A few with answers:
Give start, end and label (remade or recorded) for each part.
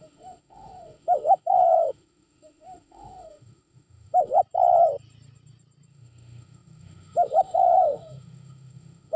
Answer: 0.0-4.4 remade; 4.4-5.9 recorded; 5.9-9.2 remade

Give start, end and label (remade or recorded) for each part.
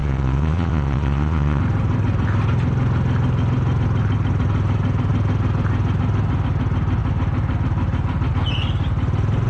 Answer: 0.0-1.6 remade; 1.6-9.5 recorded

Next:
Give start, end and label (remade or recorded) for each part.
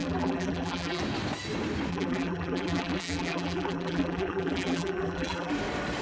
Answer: 0.0-1.0 remade; 1.0-1.9 recorded; 1.9-5.5 remade; 5.5-6.0 recorded